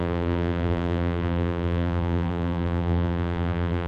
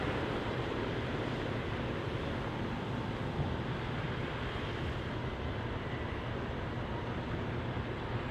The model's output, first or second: first